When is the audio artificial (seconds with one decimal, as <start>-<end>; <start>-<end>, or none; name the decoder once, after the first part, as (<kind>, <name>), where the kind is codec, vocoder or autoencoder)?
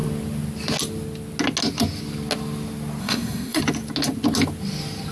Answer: 3.0-3.6 (codec, SNAC)